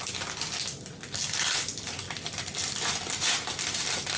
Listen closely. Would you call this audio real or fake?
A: real